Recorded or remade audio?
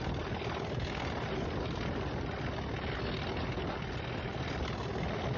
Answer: recorded